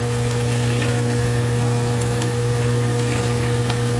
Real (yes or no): no